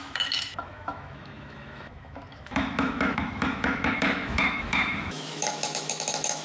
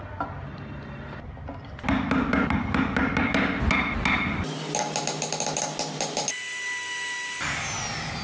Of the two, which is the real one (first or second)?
second